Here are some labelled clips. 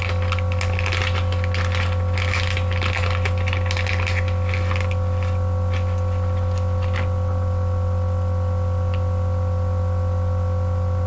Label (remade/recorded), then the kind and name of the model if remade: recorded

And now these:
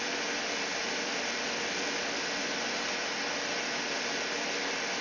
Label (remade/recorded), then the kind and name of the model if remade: recorded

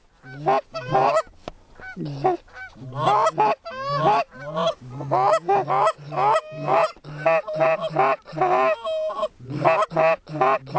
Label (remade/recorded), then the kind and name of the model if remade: recorded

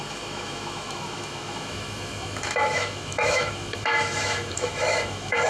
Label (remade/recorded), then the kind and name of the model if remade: remade, autoencoder, DAC-VAE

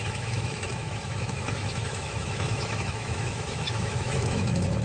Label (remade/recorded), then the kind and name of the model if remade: remade, autoencoder, DAC-VAE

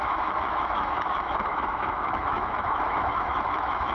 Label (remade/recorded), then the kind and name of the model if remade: remade, autoencoder, DAC-VAE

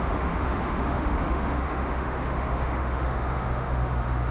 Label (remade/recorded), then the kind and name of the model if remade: remade, autoencoder, DAC-VAE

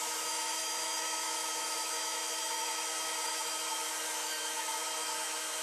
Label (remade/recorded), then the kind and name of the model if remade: remade, autoencoder, DAC-VAE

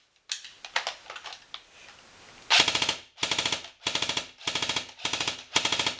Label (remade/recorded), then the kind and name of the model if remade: recorded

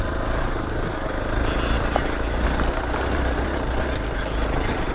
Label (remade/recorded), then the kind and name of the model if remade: recorded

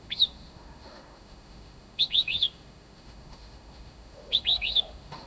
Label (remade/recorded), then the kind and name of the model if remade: remade, autoencoder, DAC-VAE